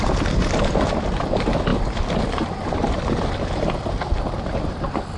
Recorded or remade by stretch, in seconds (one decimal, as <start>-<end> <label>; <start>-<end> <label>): 0.0-5.2 recorded